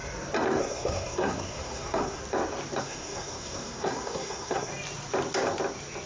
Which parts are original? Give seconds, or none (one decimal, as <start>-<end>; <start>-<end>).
0.0-0.6; 2.2-2.8; 4.7-6.1